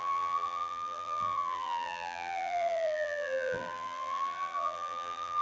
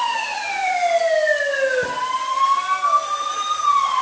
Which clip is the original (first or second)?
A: second